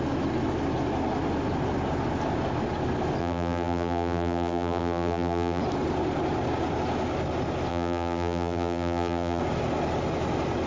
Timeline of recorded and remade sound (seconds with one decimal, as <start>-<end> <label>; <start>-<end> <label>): 0.0-3.2 recorded; 3.2-5.6 remade; 5.6-7.7 recorded; 7.7-9.4 remade; 9.4-10.7 recorded